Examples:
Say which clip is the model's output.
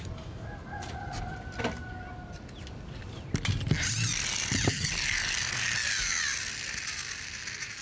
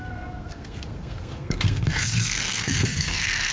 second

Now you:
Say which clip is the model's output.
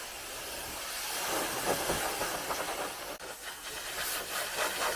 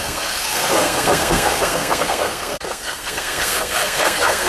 second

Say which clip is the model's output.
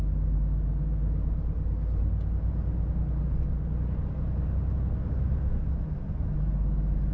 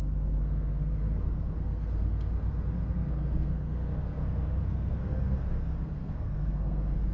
second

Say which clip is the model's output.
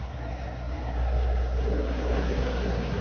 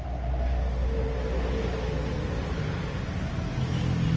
first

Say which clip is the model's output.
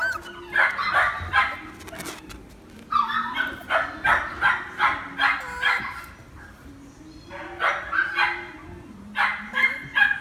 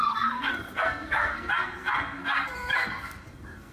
second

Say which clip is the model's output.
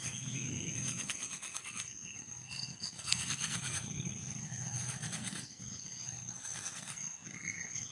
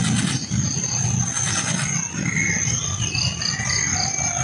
first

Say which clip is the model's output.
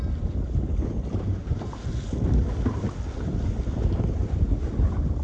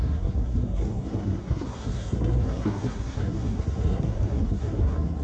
second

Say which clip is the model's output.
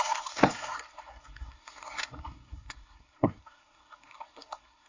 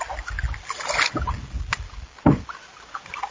first